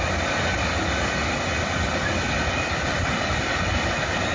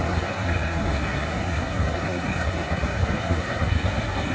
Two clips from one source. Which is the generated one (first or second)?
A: second